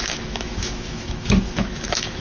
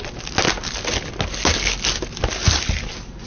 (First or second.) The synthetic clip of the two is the first